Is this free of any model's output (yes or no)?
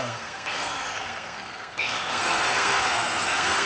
no